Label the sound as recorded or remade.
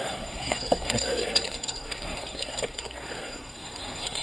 remade